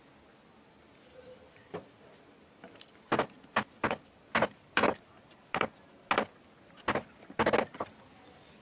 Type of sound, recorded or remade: recorded